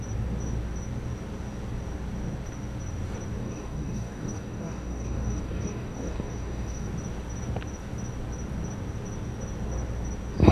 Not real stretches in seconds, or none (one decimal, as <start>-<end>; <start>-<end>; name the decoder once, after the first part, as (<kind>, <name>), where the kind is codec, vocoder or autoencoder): 3.4-6.9 (codec, DAC)